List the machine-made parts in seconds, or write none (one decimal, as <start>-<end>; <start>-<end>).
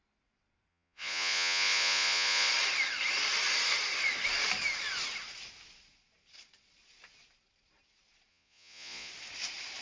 0.7-2.5; 8.3-9.1